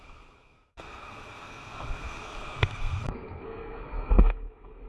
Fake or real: fake